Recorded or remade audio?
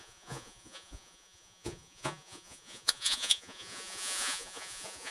remade